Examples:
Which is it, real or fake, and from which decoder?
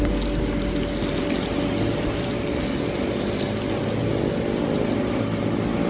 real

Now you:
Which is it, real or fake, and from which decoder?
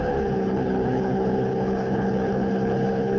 fake, codec, HILCodec